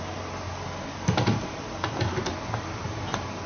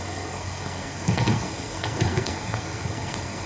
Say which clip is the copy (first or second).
second